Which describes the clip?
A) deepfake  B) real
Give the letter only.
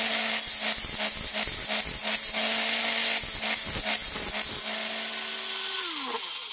B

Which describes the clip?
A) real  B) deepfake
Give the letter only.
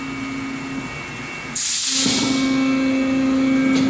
A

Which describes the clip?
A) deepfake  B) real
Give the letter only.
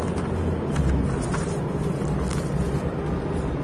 B